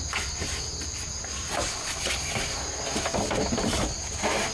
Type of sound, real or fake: real